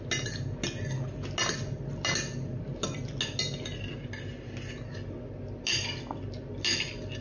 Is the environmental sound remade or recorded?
recorded